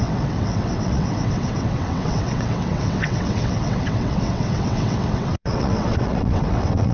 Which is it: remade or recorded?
remade